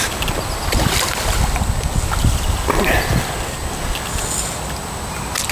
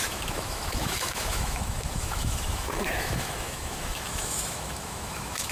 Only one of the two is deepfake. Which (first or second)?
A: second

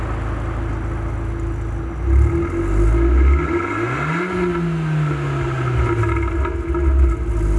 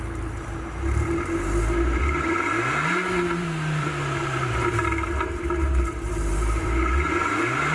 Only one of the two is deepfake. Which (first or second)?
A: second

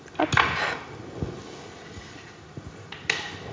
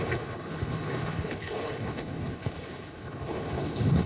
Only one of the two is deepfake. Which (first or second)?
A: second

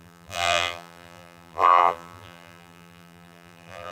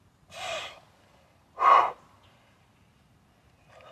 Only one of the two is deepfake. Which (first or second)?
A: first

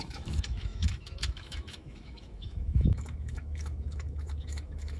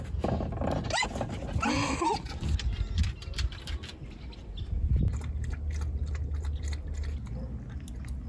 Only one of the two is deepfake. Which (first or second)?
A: first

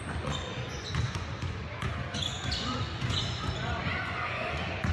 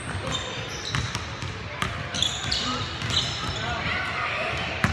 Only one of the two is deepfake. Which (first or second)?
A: first